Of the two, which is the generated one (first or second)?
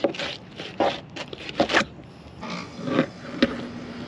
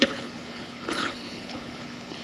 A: second